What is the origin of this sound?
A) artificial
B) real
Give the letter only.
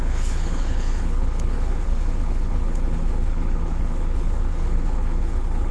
A